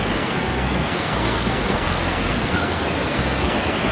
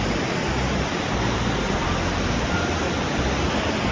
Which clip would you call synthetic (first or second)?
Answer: first